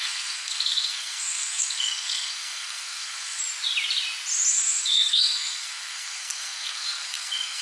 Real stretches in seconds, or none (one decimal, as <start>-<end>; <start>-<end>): 3.4-4.5